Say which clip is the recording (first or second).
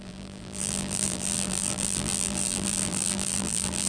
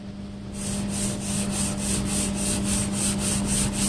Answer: second